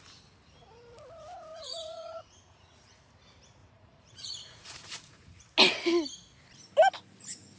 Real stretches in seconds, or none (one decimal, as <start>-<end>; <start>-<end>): 0.0-1.5; 3.1-3.6; 5.4-7.6